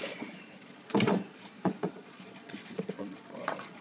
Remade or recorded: remade